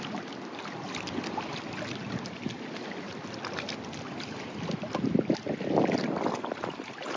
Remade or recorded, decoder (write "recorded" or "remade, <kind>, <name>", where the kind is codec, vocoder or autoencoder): recorded